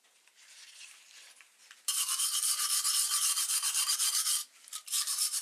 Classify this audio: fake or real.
fake